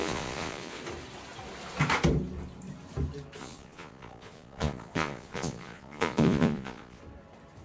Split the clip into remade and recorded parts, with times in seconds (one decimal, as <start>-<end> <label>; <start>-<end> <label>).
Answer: 0.0-0.8 remade; 0.8-3.4 recorded; 3.4-7.0 remade; 7.0-7.6 recorded

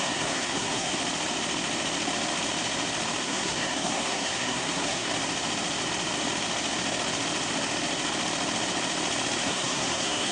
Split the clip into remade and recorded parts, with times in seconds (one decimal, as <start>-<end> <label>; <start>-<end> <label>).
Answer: 0.0-1.0 remade; 1.0-3.2 recorded; 3.2-5.1 remade; 5.1-9.4 recorded; 9.4-10.3 remade

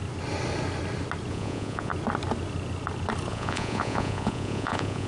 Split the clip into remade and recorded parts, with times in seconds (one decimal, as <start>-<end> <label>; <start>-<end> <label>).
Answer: 0.0-1.3 recorded; 1.3-1.9 remade; 1.9-3.3 recorded; 3.3-5.1 remade

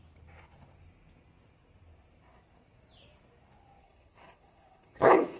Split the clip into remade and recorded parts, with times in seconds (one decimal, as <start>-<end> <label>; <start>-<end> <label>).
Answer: 0.0-3.8 recorded; 3.8-5.4 remade

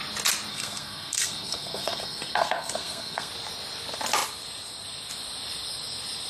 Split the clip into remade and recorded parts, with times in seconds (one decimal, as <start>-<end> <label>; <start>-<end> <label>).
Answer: 0.0-0.5 recorded; 0.5-3.3 remade; 3.3-6.3 recorded

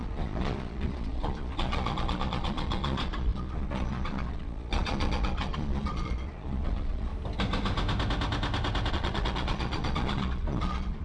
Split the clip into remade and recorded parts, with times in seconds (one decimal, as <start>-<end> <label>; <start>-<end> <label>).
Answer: 0.0-7.1 remade; 7.1-8.9 recorded; 8.9-11.0 remade

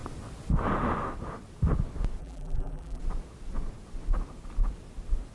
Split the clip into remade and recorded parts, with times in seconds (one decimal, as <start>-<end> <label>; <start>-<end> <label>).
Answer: 0.0-2.2 recorded; 2.2-3.0 remade; 3.0-5.3 recorded